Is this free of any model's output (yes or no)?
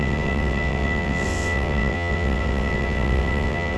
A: no